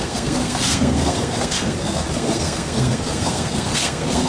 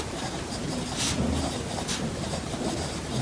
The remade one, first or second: first